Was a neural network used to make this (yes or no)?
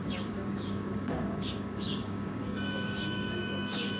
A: yes